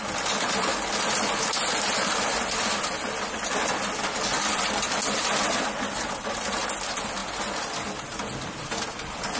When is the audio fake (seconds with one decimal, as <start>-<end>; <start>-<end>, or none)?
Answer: none